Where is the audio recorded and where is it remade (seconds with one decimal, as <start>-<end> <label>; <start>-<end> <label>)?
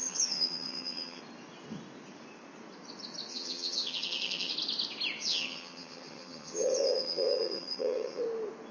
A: 0.0-1.2 remade; 1.2-3.3 recorded; 3.3-4.5 remade; 4.5-5.3 recorded; 5.3-8.2 remade; 8.2-8.7 recorded